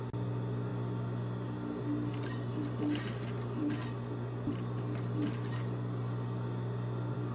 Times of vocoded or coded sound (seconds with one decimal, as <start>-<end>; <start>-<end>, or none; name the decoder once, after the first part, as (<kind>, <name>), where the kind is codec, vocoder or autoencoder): none